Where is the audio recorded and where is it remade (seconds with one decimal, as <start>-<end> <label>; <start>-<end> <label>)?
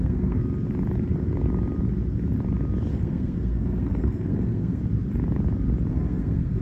0.0-0.4 remade; 0.4-2.9 recorded; 2.9-4.8 remade; 4.8-5.9 recorded; 5.9-6.6 remade